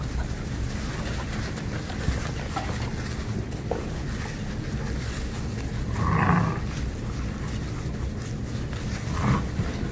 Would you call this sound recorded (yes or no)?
yes